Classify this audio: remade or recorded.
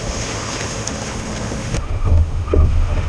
remade